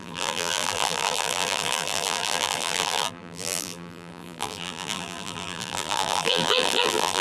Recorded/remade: remade